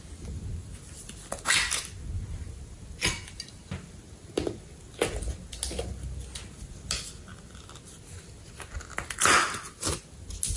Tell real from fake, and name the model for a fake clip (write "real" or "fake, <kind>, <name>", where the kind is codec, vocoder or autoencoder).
real